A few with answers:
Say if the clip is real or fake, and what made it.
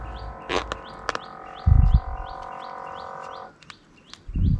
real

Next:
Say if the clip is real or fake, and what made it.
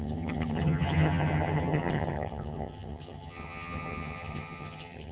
fake, vocoder, HiFi-GAN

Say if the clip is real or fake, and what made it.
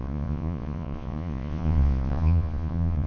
fake, vocoder, Vocos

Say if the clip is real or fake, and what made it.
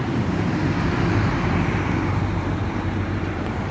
fake, vocoder, BigVGAN v2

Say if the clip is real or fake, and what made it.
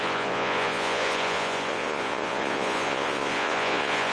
fake, vocoder, Vocos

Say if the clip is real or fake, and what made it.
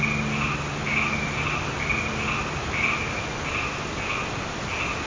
real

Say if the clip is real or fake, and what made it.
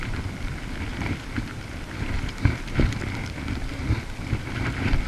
real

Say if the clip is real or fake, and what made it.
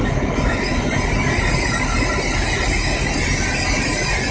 real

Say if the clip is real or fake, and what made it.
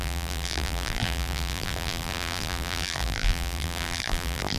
fake, vocoder, BigVGAN v2